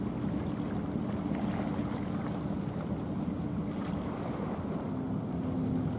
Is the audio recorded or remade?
recorded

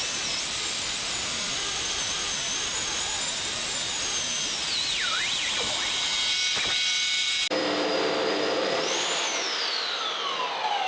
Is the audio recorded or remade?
recorded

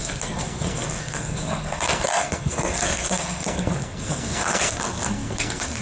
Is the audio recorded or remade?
remade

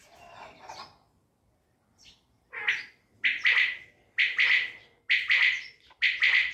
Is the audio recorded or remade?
recorded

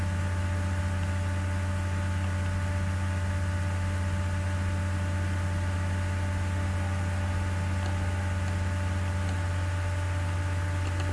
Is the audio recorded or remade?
recorded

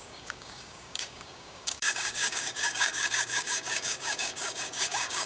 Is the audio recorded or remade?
remade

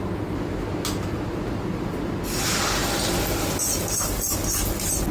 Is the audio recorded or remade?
recorded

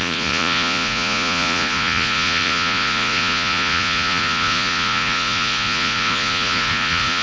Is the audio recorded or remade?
remade